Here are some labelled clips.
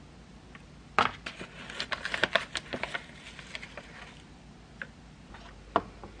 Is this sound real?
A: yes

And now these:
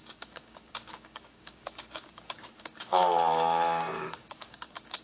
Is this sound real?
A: no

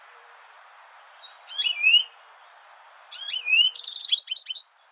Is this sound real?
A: no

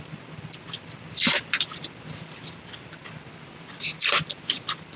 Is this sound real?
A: yes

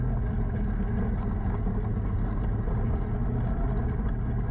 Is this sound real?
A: yes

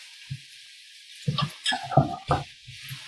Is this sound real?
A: yes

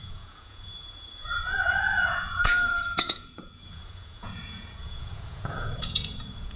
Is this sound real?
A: no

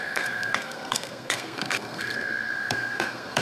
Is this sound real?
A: no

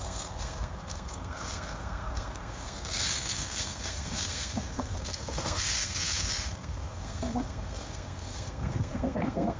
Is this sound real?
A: no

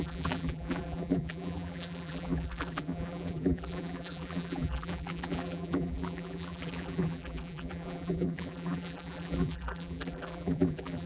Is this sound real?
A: no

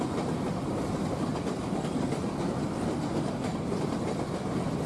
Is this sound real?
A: yes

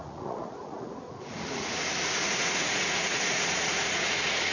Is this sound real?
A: no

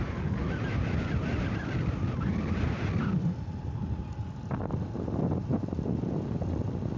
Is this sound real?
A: yes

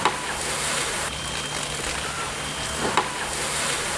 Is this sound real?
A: no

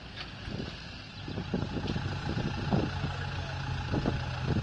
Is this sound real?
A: yes